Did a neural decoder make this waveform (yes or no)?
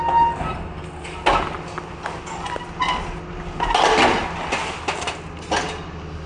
no